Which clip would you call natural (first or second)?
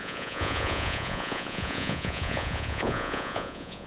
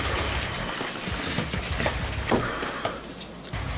second